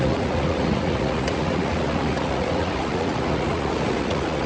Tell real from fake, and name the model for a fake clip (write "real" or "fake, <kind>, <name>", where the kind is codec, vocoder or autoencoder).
fake, vocoder, Vocos